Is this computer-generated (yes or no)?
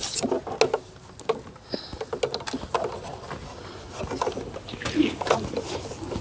no